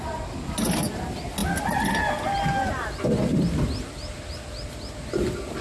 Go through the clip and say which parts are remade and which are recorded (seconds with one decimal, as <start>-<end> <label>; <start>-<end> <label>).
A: 0.0-5.6 recorded